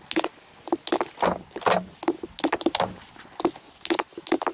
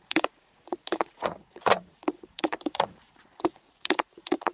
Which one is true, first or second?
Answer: first